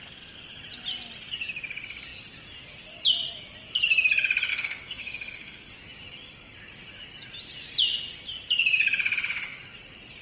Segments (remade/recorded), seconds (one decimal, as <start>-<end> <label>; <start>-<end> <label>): 0.0-4.5 recorded; 4.5-5.7 remade; 5.7-10.2 recorded